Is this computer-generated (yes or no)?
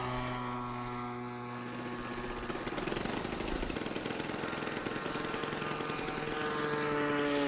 no